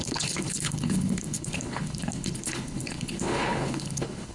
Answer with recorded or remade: remade